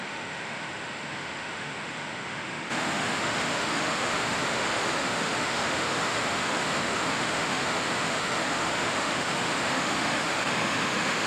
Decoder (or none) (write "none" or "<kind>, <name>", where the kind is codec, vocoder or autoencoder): autoencoder, DAC-VAE